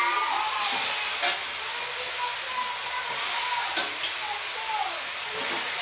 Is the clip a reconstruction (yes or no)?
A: no